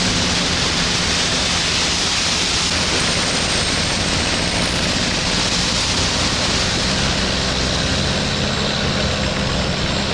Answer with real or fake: real